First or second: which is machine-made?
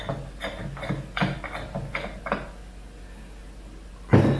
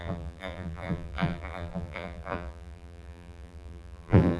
second